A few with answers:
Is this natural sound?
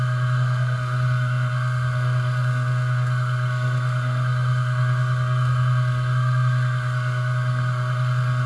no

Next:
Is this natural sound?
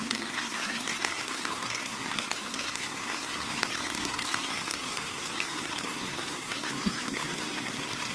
no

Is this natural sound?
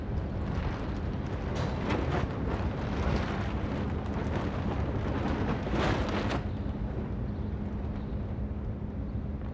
yes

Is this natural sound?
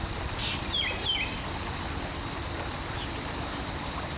yes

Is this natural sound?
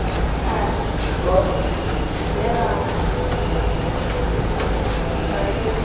yes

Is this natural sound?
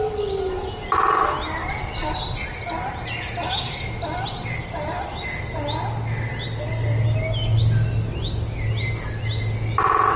yes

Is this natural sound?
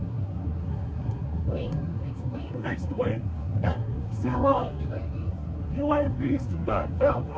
no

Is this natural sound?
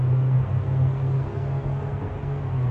no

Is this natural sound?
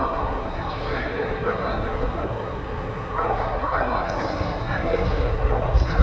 no